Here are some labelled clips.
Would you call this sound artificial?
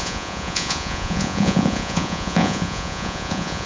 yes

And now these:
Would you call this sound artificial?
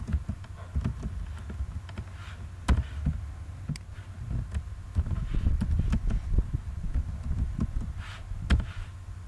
no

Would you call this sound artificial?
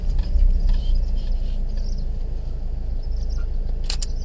no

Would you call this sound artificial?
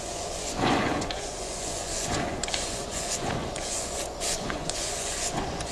yes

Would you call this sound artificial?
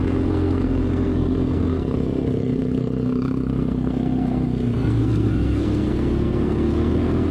yes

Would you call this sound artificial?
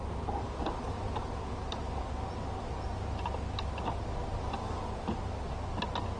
no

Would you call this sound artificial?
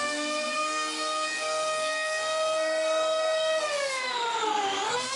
yes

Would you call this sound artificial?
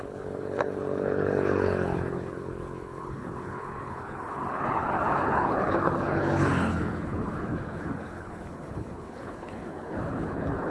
yes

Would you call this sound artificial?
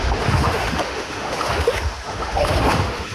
yes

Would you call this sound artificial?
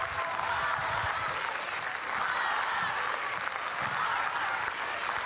no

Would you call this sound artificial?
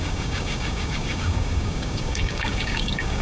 yes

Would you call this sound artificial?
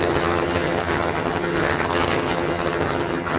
yes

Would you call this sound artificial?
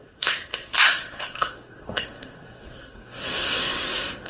yes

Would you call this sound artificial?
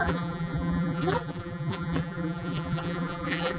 yes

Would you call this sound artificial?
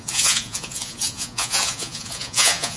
yes